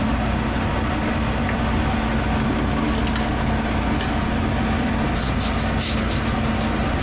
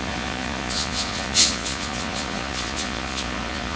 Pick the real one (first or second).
first